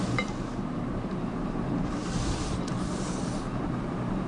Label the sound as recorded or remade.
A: remade